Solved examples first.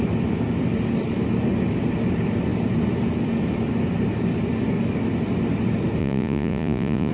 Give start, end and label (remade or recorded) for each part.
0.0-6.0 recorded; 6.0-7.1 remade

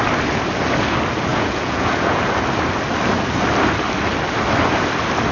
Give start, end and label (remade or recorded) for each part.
0.0-1.3 recorded; 1.3-2.2 remade; 2.2-5.3 recorded

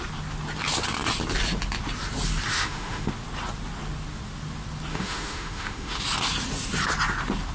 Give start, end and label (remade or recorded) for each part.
0.0-2.5 recorded; 2.5-3.1 remade; 3.1-4.9 recorded; 4.9-6.0 remade; 6.0-7.5 recorded

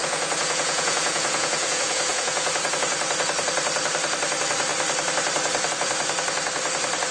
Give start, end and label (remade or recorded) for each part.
0.0-2.7 remade; 2.7-7.1 recorded

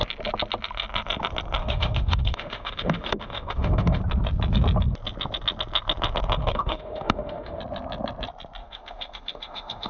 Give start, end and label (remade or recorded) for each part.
0.0-1.6 recorded; 1.6-4.0 remade; 4.0-6.4 recorded; 6.4-7.6 remade; 7.6-8.6 recorded; 8.6-9.9 remade

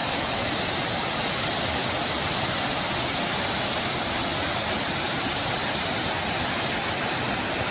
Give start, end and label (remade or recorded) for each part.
0.0-7.7 recorded

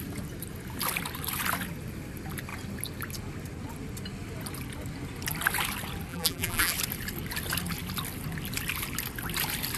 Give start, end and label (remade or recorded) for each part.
0.0-6.1 recorded; 6.1-6.7 remade; 6.7-9.8 recorded

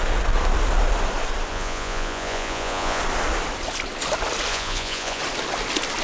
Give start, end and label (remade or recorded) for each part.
0.0-1.5 recorded; 1.5-3.0 remade; 3.0-4.5 recorded; 4.5-5.2 remade; 5.2-6.0 recorded